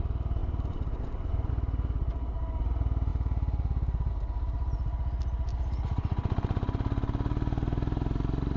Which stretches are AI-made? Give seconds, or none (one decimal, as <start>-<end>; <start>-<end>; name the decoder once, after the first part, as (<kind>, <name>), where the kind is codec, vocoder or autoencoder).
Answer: 0.4-1.5 (vocoder, BigVGAN v2); 3.1-4.1